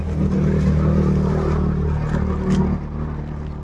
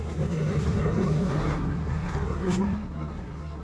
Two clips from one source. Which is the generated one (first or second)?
second